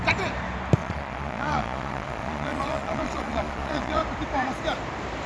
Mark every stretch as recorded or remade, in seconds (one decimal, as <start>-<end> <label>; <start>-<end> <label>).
0.0-0.8 recorded; 0.8-4.0 remade; 4.0-5.3 recorded